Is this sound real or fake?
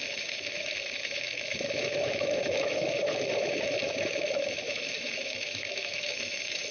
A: fake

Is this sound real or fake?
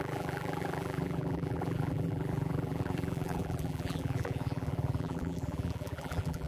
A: fake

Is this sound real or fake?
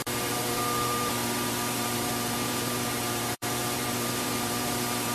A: fake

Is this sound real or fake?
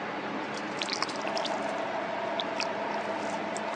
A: real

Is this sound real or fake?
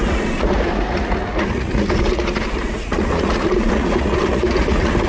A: fake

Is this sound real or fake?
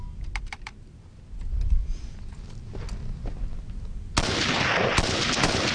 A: real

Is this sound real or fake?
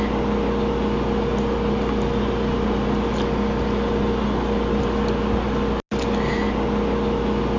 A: real